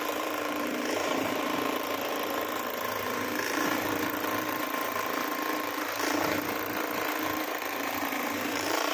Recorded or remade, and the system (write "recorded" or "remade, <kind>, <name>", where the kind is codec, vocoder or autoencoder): remade, vocoder, BigVGAN v2